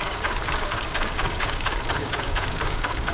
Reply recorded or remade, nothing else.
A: remade